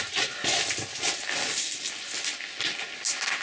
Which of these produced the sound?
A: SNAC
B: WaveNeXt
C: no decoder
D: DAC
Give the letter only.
C